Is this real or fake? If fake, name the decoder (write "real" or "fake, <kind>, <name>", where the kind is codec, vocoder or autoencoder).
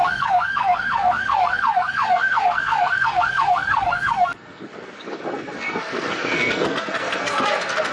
fake, codec, SNAC